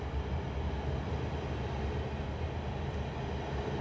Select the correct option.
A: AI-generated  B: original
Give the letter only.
B